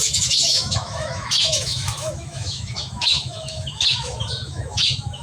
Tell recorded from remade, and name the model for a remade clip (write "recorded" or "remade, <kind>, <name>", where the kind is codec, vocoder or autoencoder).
remade, autoencoder, DAC-VAE